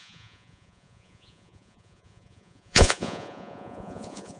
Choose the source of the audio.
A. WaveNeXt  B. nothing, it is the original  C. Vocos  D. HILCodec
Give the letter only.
C